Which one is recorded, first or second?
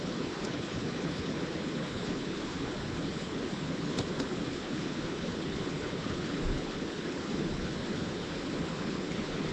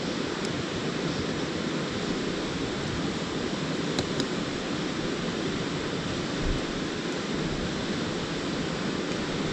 second